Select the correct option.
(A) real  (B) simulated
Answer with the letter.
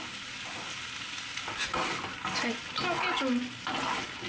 A